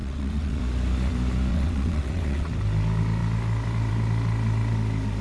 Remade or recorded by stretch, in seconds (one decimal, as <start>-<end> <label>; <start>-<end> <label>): 0.0-0.6 remade; 0.6-1.5 recorded; 1.5-2.5 remade; 2.5-5.2 recorded